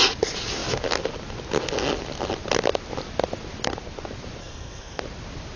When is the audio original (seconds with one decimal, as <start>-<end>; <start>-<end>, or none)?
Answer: 0.0-4.4; 5.0-5.6